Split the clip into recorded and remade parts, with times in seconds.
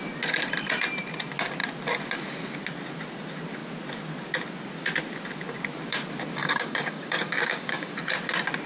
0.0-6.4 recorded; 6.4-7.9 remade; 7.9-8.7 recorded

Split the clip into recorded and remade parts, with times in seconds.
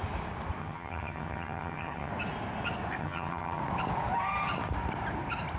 0.0-0.6 recorded; 0.6-2.1 remade; 2.1-3.0 recorded; 3.0-3.6 remade; 3.6-5.6 recorded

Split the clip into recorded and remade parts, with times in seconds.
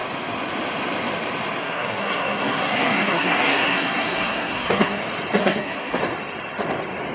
0.0-1.6 recorded; 1.6-5.0 remade; 5.0-5.4 recorded; 5.4-6.0 remade; 6.0-7.1 recorded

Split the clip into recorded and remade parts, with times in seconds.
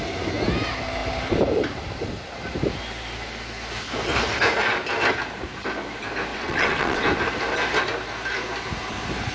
0.0-6.3 recorded; 6.3-7.0 remade; 7.0-9.3 recorded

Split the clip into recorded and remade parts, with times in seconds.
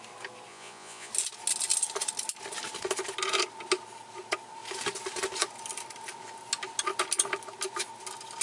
0.0-0.5 recorded; 0.5-1.1 remade; 1.1-8.4 recorded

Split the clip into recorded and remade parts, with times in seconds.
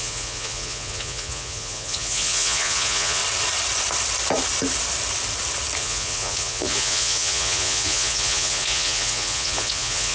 0.0-3.2 remade; 3.2-5.8 recorded; 5.8-10.1 remade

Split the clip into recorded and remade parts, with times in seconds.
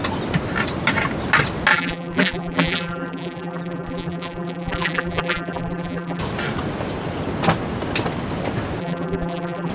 0.0-1.7 recorded; 1.7-6.2 remade; 6.2-8.8 recorded; 8.8-9.7 remade